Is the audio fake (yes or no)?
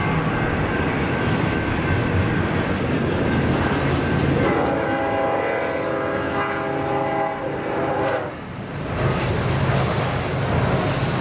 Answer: no